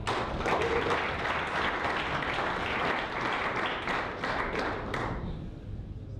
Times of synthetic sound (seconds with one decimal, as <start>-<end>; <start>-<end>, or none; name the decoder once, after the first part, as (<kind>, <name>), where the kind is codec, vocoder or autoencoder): none